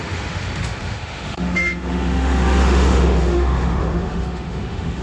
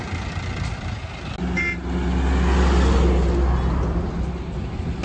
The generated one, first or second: first